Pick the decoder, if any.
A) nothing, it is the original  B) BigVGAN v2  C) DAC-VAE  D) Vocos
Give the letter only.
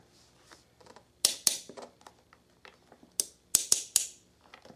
A